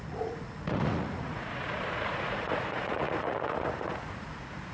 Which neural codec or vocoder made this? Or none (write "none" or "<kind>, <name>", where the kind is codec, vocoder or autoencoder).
vocoder, Vocos